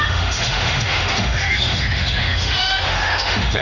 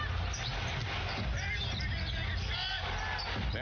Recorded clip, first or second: second